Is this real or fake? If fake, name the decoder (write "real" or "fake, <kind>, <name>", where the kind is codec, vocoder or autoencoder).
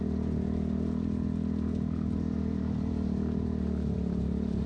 real